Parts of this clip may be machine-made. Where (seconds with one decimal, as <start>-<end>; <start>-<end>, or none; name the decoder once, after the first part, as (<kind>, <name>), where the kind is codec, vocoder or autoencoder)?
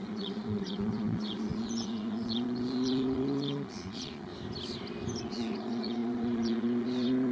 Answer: 0.0-4.3 (vocoder, Vocos); 5.2-7.3